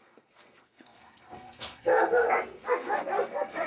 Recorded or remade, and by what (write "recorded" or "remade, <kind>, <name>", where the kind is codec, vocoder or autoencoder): remade, codec, SNAC